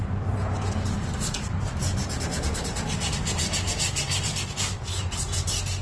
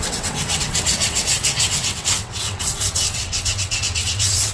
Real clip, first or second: first